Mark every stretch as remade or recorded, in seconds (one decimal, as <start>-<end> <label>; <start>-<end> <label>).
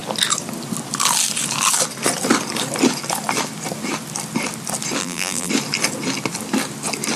0.0-5.0 recorded; 5.0-5.5 remade; 5.5-7.2 recorded